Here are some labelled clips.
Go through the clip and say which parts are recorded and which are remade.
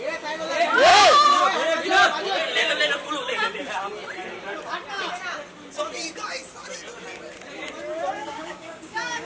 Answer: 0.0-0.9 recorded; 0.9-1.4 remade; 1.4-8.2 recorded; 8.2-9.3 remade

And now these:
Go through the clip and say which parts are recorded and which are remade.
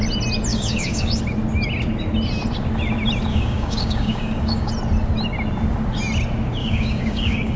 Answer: 0.0-0.5 recorded; 0.5-1.2 remade; 1.2-3.3 recorded; 3.3-4.7 remade; 4.7-6.6 recorded; 6.6-7.6 remade